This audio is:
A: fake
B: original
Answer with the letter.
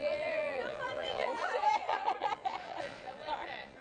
A